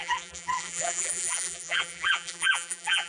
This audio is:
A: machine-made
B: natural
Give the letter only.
A